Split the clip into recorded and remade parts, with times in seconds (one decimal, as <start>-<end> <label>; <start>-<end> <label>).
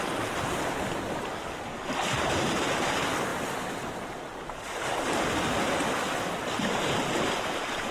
0.0-7.9 recorded